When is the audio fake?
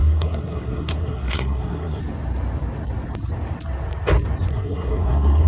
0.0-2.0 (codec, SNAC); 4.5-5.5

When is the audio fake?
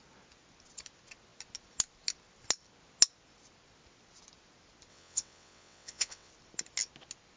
4.9-6.3 (vocoder, WaveNeXt)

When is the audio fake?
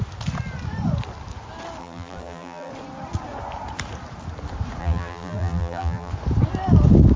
1.8-2.7 (vocoder, BigVGAN v2); 4.8-6.1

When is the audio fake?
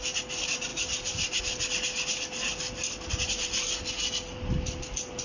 none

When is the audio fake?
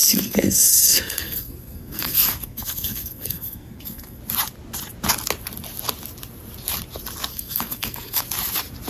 0.0-4.2 (codec, SNAC); 7.3-8.2